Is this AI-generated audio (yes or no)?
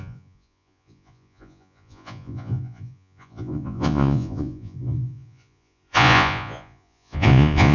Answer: yes